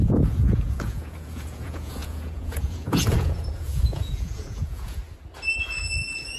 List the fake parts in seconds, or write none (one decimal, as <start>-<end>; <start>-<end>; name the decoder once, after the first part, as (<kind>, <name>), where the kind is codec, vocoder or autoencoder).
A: 0.0-5.0 (vocoder, Vocos); 5.6-6.4